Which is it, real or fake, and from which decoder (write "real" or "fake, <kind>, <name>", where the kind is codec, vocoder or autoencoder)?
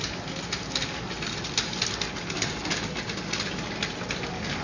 real